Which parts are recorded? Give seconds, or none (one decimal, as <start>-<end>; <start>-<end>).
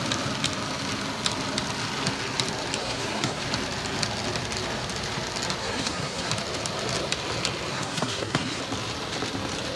0.0-2.8; 3.4-5.6; 6.3-7.7; 8.6-9.8